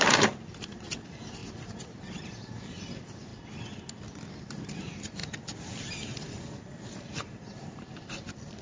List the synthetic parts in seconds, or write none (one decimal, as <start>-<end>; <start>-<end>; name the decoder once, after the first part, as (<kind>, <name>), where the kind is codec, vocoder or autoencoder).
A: 0.0-1.4 (vocoder, BigVGAN v2); 2.6-3.3; 4.4-5.2; 6.6-8.6